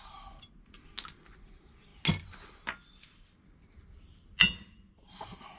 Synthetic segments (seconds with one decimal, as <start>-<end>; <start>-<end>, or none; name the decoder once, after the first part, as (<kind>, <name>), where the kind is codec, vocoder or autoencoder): none